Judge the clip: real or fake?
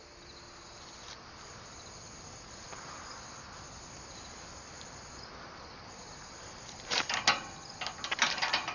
real